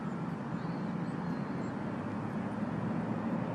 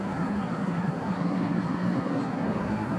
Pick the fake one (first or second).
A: second